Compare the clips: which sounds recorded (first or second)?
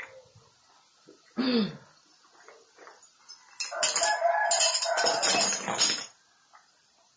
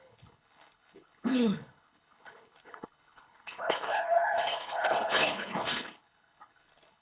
first